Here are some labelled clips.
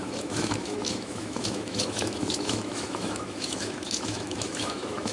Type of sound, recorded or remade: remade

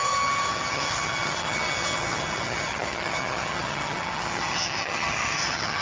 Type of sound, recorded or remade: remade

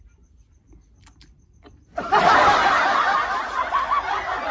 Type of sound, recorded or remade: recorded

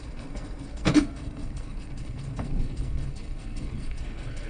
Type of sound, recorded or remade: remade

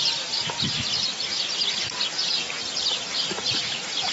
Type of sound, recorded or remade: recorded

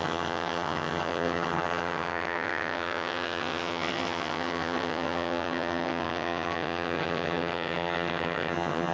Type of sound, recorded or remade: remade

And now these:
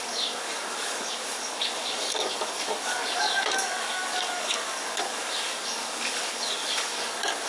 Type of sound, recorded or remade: remade